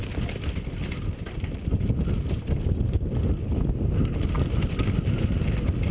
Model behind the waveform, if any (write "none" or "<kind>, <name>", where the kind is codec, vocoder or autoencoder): none